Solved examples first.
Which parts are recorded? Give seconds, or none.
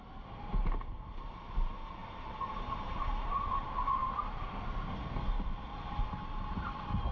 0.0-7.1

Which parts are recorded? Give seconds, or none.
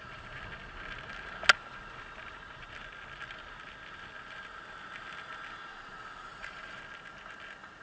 0.0-6.3; 6.8-7.8